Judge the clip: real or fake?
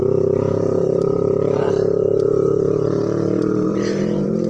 fake